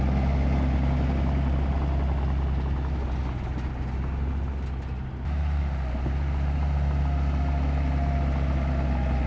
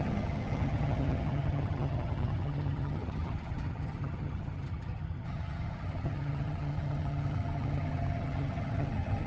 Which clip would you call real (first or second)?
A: first